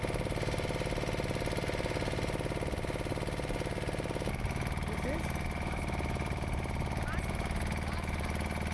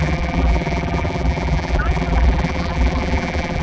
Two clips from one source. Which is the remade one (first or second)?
second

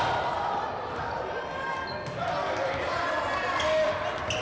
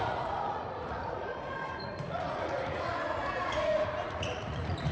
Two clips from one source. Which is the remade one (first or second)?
second